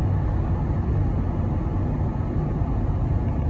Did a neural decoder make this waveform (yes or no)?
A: no